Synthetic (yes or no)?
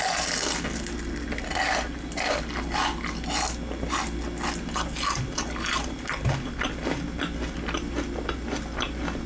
no